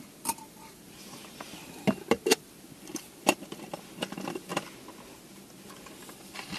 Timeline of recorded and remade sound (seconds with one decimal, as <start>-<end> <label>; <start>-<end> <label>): 0.0-4.5 remade; 4.5-6.0 recorded; 6.0-6.6 remade